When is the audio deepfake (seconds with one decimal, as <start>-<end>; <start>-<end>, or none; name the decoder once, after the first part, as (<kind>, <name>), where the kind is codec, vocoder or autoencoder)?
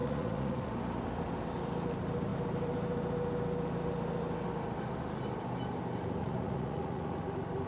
0.0-0.7 (vocoder, Vocos); 6.2-7.2